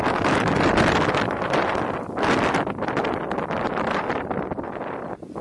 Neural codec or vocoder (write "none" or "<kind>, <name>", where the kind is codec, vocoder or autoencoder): none